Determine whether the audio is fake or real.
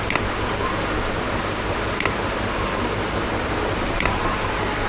real